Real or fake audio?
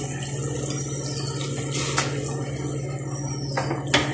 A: real